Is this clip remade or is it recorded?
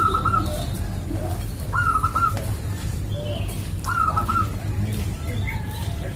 recorded